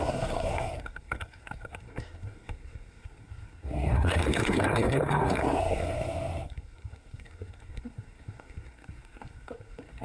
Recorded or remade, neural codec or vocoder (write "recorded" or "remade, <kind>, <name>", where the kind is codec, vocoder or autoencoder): remade, codec, SNAC